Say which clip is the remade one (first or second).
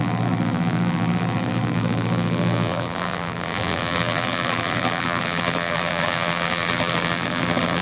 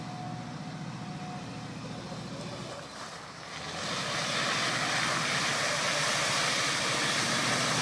first